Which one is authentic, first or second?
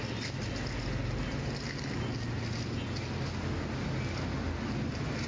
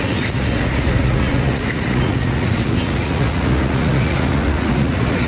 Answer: first